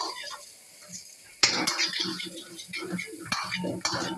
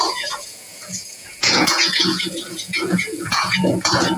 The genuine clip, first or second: first